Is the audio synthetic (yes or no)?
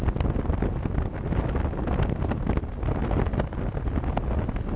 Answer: no